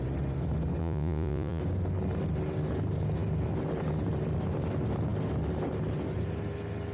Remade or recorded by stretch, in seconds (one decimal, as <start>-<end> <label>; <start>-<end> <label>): 0.0-0.8 recorded; 0.8-1.6 remade; 1.6-6.9 recorded